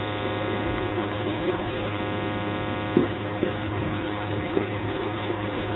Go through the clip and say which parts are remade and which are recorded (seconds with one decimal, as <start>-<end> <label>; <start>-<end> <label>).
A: 0.0-0.9 recorded; 0.9-2.0 remade; 2.0-3.0 recorded; 3.0-5.8 remade